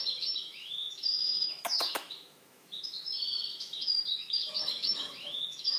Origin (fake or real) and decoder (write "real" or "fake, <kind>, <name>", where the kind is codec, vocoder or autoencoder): fake, autoencoder, DAC-VAE